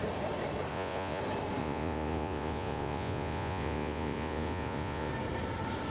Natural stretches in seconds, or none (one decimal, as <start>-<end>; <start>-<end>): 0.0-0.7; 1.2-1.6; 5.1-5.9